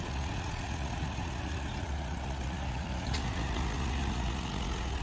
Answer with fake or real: fake